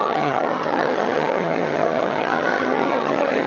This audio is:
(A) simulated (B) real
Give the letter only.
A